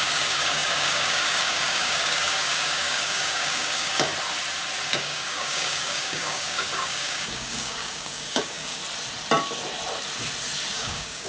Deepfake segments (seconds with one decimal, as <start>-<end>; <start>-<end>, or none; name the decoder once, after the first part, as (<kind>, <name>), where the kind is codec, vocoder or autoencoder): 0.0-4.1 (codec, DAC); 4.9-8.8; 10.7-11.3